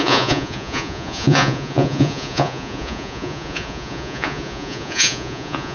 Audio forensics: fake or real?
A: fake